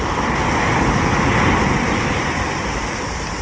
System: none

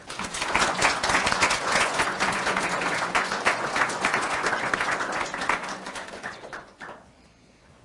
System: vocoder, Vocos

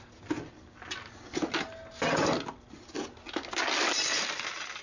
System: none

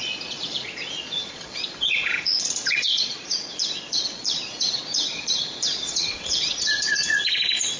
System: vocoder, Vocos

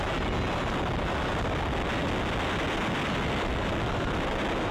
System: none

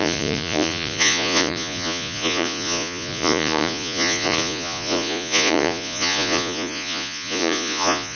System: vocoder, Vocos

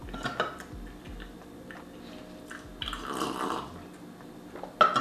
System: none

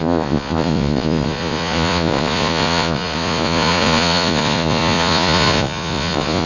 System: vocoder, Vocos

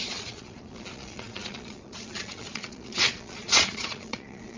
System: vocoder, Vocos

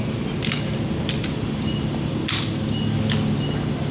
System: none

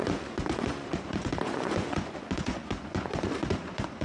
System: vocoder, Vocos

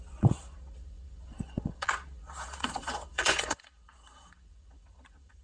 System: vocoder, Vocos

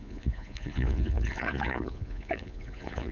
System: vocoder, Vocos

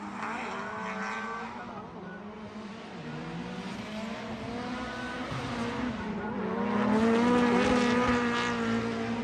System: none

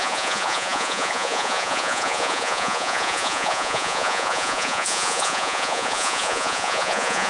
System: vocoder, Vocos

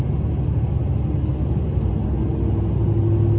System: none